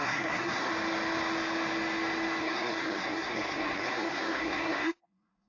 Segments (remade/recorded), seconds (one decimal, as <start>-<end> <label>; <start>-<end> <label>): 0.0-0.7 remade; 0.7-2.4 recorded; 2.4-5.5 remade